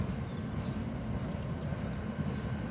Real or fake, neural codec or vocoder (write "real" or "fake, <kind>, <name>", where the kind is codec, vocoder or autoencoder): real